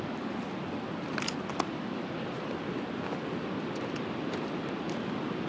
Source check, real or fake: real